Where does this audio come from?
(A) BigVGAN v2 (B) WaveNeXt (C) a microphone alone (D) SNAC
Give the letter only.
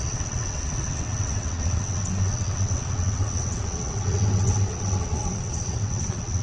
B